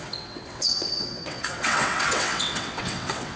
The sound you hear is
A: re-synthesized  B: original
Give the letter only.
A